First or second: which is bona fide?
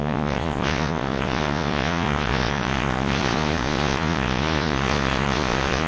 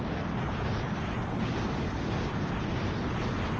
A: second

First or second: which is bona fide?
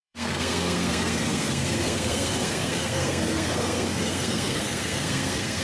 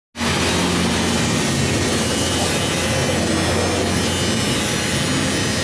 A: second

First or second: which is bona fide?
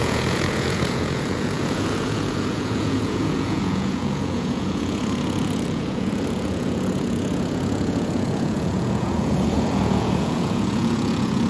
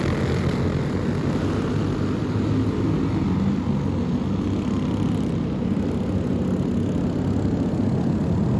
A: second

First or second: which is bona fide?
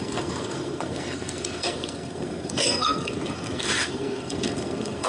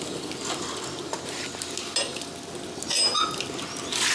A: second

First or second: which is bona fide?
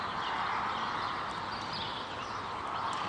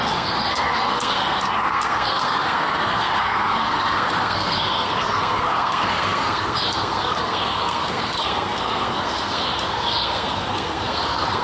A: first